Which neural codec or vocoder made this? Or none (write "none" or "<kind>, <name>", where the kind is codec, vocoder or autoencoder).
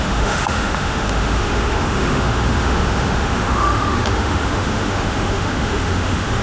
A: autoencoder, DAC-VAE